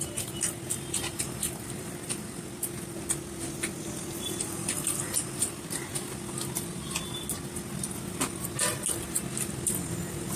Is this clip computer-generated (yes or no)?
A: no